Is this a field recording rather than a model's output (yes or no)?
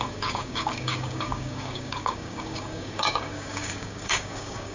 no